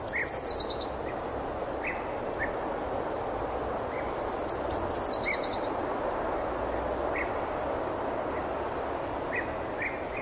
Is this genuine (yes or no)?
yes